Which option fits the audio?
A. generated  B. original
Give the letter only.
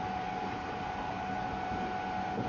B